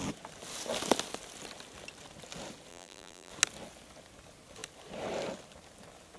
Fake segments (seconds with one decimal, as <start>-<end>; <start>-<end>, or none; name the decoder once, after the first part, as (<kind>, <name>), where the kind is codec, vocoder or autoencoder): 2.7-3.3 (vocoder, BigVGAN v2)